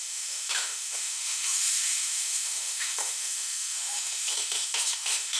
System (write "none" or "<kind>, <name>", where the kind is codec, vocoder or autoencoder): autoencoder, DAC-VAE